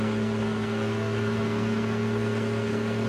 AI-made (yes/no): yes